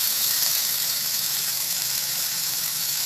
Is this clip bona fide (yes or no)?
no